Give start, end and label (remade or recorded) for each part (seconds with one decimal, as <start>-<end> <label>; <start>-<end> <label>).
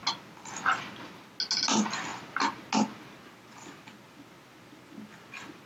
0.0-5.7 recorded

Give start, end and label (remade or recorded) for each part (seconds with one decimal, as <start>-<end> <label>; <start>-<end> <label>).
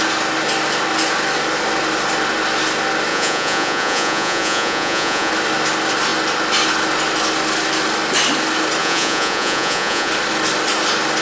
0.0-3.1 recorded; 3.1-5.3 remade; 5.3-8.8 recorded; 8.8-10.1 remade; 10.1-11.2 recorded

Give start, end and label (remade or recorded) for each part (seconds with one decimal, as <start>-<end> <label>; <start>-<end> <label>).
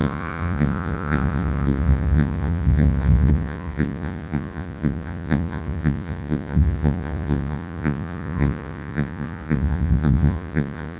0.0-11.0 remade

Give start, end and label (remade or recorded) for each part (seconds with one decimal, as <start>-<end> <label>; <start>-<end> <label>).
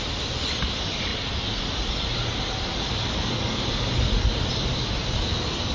0.0-5.7 recorded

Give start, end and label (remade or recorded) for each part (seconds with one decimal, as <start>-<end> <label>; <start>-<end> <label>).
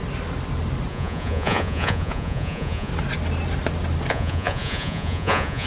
0.0-0.9 recorded; 0.9-2.9 remade; 2.9-4.1 recorded; 4.1-5.7 remade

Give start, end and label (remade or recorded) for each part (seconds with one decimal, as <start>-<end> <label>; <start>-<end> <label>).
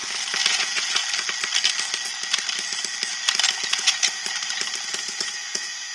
0.0-0.5 recorded; 0.5-1.0 remade; 1.0-3.7 recorded; 3.7-4.2 remade; 4.2-5.0 recorded; 5.0-5.9 remade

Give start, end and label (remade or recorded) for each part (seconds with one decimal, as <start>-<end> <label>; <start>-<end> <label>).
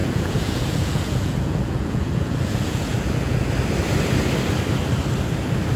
0.0-3.5 remade; 3.5-5.8 recorded